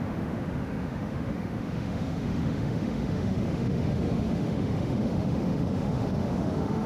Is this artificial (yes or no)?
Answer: yes